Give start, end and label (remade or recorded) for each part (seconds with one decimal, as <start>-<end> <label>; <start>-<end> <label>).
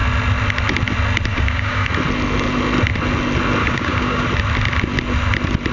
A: 0.0-1.3 recorded; 1.3-1.9 remade; 1.9-3.6 recorded; 3.6-4.2 remade; 4.2-5.7 recorded